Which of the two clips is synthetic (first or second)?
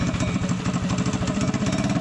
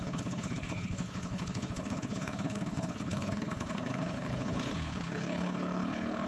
second